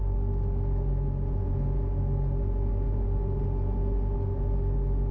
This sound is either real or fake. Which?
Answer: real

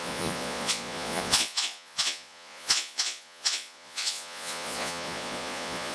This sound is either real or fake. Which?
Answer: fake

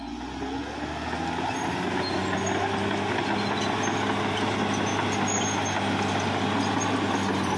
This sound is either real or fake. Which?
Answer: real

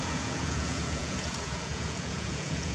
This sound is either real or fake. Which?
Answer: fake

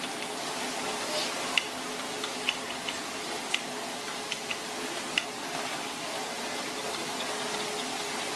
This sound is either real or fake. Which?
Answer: real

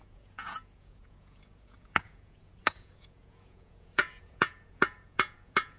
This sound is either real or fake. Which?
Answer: fake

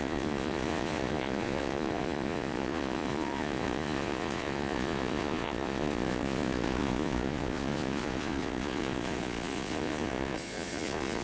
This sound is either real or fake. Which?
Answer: fake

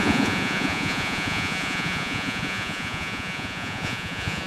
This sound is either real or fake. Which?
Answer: fake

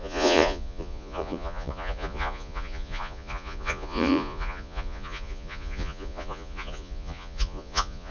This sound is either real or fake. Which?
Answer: fake